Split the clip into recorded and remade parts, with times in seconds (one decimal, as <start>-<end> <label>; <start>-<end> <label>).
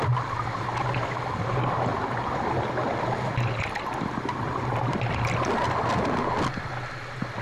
0.0-7.4 recorded